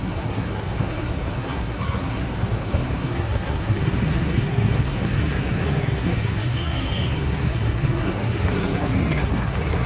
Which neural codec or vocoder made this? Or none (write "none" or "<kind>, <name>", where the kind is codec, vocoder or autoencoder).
codec, SNAC